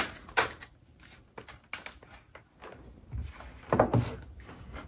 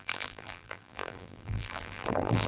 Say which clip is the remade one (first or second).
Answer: second